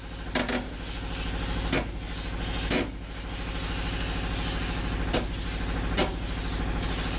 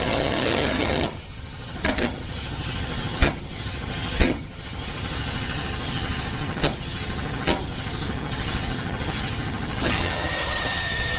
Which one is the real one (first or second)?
first